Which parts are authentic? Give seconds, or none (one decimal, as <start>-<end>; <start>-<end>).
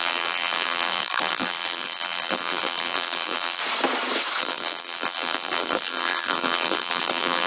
3.6-4.4